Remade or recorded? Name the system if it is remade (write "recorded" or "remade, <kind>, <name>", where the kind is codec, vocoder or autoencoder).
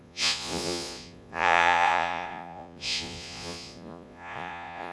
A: remade, vocoder, Vocos